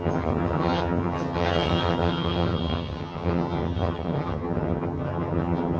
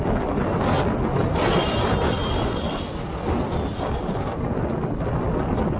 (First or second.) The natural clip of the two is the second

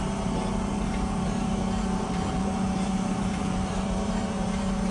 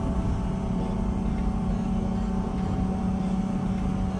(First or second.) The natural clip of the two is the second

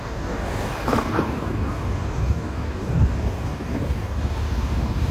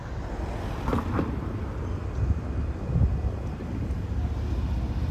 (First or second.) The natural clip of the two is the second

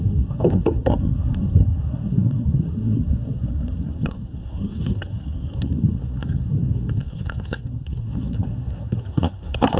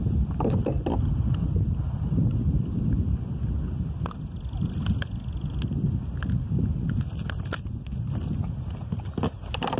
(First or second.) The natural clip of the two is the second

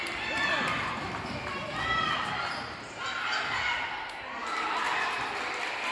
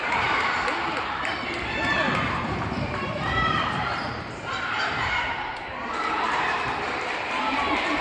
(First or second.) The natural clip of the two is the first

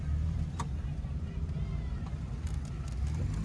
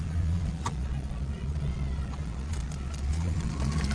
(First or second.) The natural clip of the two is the first